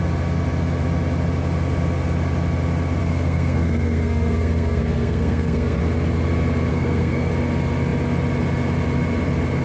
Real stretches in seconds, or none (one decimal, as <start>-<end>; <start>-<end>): 0.0-3.0; 5.8-6.7; 7.3-9.6